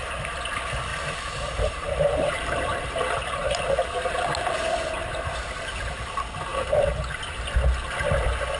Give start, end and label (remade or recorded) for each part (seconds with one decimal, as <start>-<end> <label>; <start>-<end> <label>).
0.0-0.9 recorded; 0.9-3.6 remade; 3.6-5.0 recorded; 5.0-5.9 remade; 5.9-6.5 recorded; 6.5-7.4 remade; 7.4-8.6 recorded